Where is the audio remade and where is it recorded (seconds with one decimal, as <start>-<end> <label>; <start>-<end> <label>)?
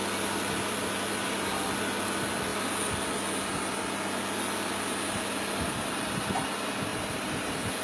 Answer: 0.0-6.9 recorded; 6.9-7.8 remade